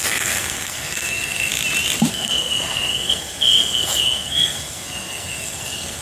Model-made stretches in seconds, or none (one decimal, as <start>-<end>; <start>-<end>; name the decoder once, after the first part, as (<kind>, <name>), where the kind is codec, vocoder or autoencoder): 0.0-1.5 (codec, SNAC); 2.1-6.0